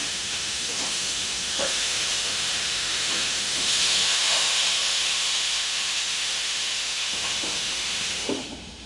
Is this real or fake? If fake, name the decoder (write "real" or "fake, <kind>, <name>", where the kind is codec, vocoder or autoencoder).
fake, autoencoder, DAC-VAE